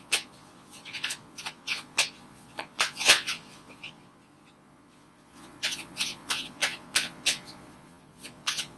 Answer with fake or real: fake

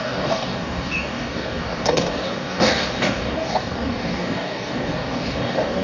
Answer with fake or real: fake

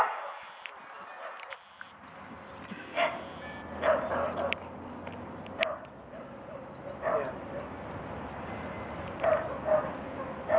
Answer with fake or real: real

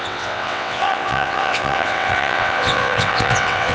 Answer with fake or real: fake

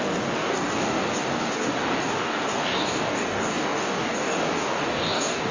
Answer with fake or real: fake